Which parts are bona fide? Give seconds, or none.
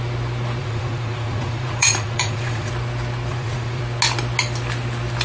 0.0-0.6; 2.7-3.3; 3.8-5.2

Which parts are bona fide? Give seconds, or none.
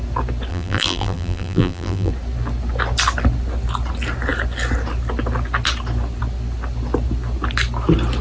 0.0-0.5; 2.1-8.2